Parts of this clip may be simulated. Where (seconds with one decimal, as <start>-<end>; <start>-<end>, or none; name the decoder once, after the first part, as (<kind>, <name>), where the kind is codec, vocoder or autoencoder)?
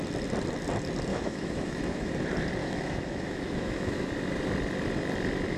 1.1-2.1 (autoencoder, DAC-VAE); 2.6-4.1